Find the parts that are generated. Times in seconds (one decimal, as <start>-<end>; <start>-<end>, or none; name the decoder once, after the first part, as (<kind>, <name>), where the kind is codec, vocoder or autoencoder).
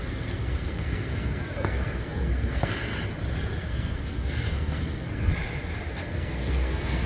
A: 0.0-2.9 (codec, SNAC); 3.6-5.3; 5.9-7.1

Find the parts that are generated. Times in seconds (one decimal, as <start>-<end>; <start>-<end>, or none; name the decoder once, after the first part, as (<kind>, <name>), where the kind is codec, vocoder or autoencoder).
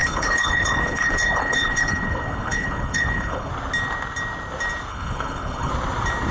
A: 0.0-3.5 (codec, HILCodec); 4.9-5.7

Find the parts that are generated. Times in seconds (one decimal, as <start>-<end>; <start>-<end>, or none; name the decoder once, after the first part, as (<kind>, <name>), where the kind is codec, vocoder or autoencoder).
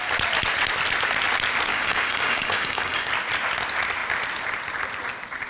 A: 1.7-3.1 (codec, DAC)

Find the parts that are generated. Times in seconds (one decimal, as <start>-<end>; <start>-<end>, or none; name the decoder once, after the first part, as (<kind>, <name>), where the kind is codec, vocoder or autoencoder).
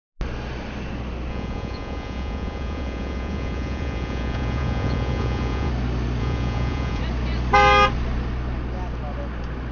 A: 1.3-5.7 (vocoder, Vocos); 6.2-7.0